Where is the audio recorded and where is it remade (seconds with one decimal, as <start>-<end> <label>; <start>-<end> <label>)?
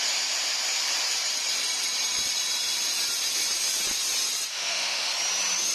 0.0-4.5 recorded; 4.5-5.1 remade; 5.1-5.7 recorded